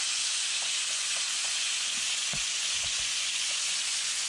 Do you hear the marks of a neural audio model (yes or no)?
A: yes